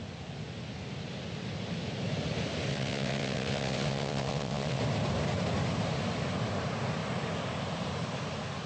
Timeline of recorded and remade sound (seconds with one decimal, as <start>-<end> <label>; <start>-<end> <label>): 0.0-2.7 recorded; 2.7-4.8 remade; 4.8-8.7 recorded